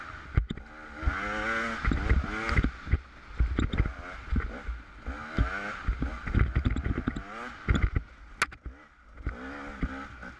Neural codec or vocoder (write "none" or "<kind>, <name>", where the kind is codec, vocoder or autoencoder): none